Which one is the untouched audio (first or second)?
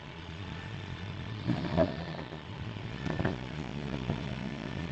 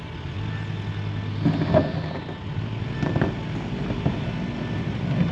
second